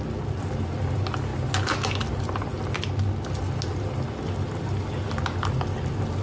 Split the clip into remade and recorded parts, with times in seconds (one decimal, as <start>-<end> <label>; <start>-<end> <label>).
0.0-6.2 recorded